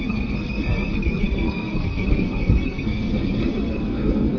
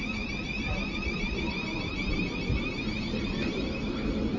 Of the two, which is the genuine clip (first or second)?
second